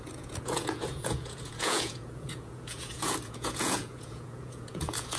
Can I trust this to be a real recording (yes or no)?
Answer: no